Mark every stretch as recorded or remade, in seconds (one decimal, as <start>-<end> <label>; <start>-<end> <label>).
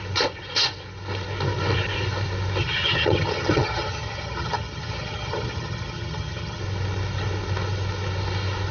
0.0-2.6 recorded; 2.6-6.6 remade; 6.6-8.7 recorded